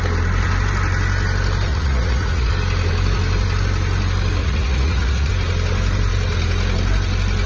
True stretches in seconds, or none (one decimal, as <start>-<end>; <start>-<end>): 0.0-1.7; 2.5-4.4; 5.3-7.5